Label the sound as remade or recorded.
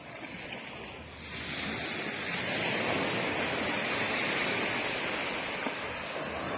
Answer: recorded